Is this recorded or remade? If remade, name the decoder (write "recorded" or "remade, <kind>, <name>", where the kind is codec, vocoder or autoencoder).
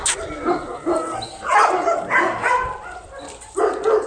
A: recorded